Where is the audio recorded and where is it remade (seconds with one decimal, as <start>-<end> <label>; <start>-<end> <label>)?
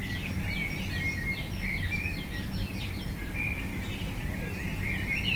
0.0-5.4 recorded